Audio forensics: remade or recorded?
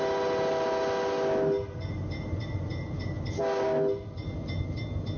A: recorded